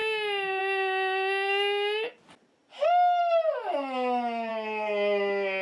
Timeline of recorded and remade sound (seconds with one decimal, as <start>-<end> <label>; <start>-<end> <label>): 0.0-3.7 recorded; 3.7-4.5 remade; 4.5-5.6 recorded